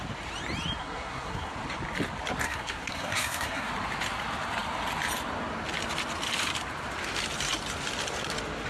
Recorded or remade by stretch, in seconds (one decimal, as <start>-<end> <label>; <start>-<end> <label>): 0.0-0.8 recorded; 0.8-1.5 remade; 1.5-2.4 recorded; 2.4-3.7 remade; 3.7-8.7 recorded